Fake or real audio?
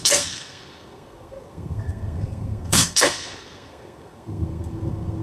fake